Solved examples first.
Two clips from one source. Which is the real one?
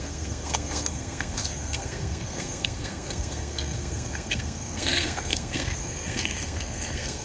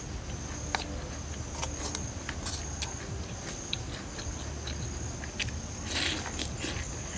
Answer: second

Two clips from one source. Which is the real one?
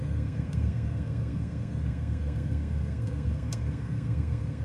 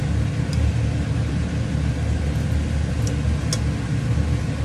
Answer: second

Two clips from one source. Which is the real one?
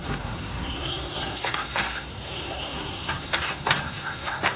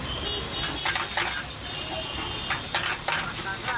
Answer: second